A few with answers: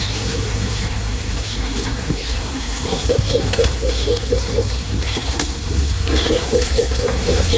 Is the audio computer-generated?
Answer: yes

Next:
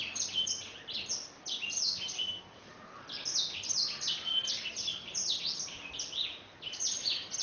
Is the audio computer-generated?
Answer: no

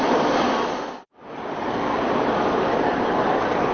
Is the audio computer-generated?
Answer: no